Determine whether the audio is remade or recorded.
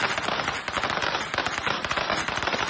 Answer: recorded